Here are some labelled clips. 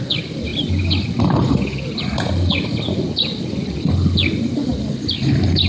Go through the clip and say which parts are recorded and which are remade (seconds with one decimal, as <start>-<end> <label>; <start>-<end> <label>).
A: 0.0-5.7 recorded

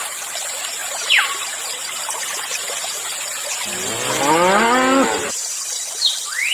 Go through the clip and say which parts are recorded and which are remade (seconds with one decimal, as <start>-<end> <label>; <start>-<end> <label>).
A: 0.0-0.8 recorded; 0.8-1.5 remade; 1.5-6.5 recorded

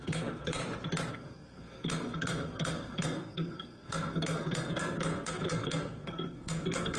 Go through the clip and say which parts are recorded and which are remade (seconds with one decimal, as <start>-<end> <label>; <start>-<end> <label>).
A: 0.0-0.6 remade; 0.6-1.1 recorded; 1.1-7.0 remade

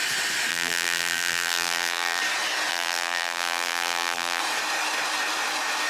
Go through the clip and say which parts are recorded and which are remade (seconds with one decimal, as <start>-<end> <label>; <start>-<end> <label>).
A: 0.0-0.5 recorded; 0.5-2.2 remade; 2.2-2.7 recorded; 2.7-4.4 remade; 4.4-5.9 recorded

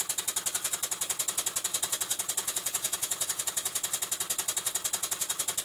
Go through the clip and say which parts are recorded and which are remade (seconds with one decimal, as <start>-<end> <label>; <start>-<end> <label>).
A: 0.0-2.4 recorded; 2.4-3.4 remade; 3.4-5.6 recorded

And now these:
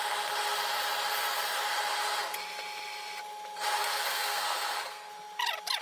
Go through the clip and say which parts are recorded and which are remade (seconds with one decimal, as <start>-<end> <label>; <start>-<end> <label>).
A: 0.0-3.8 recorded; 3.8-5.1 remade; 5.1-5.8 recorded